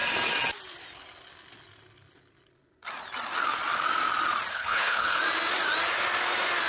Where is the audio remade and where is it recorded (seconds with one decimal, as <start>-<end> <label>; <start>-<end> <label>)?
0.0-4.5 recorded; 4.5-5.2 remade; 5.2-6.7 recorded